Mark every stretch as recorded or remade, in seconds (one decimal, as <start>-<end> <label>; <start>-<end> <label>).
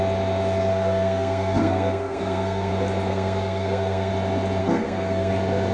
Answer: 0.0-0.7 recorded; 0.7-2.7 remade; 2.7-3.1 recorded; 3.1-4.1 remade; 4.1-4.6 recorded; 4.6-5.3 remade; 5.3-5.7 recorded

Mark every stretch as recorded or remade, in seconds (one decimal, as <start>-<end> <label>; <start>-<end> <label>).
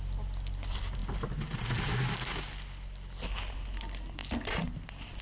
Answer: 0.0-5.2 recorded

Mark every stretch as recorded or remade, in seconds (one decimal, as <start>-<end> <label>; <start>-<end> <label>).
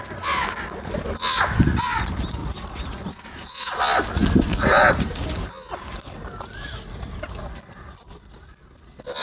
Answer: 0.0-2.4 recorded; 2.4-3.8 remade; 3.8-4.5 recorded; 4.5-5.1 remade; 5.1-9.2 recorded